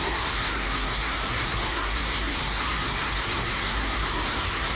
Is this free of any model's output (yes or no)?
no